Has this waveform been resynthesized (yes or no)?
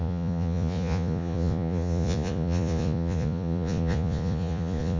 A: yes